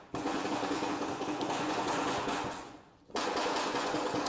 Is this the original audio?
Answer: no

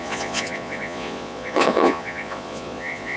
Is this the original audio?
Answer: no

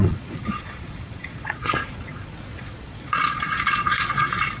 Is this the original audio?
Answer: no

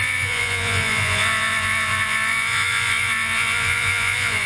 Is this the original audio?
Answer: no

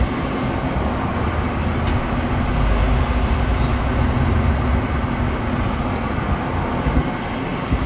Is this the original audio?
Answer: yes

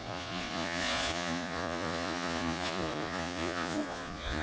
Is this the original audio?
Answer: no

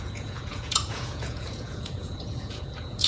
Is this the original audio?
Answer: no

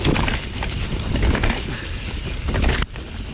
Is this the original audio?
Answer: yes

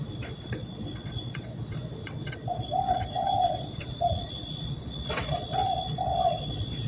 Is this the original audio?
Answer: no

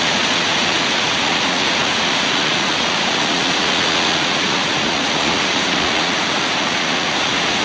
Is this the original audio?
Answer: no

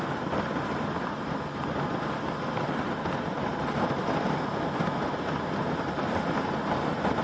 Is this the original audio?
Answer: yes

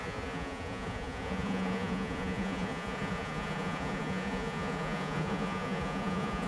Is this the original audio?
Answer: no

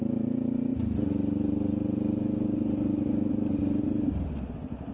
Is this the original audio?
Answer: yes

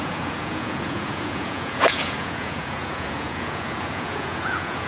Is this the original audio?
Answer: no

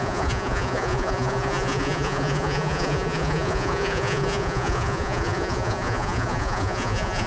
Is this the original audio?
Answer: no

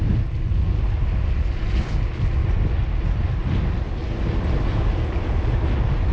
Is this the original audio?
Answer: yes